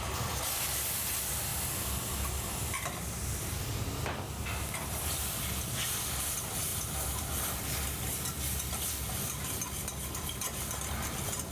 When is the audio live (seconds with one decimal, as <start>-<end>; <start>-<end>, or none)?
0.0-6.7; 7.5-11.5